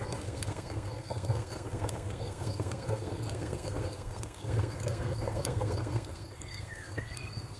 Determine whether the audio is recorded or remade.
remade